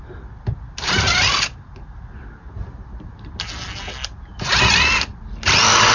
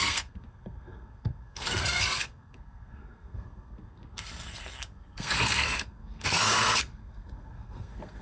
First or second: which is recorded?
first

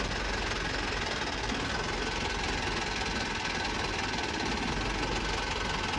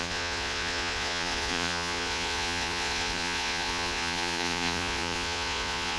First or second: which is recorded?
first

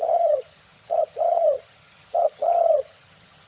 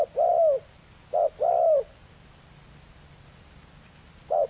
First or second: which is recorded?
second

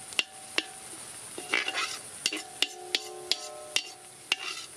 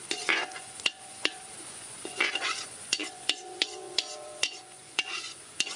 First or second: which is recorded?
first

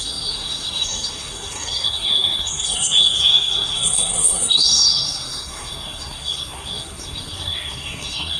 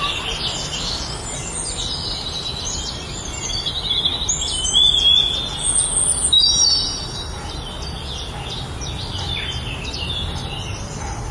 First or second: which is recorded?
second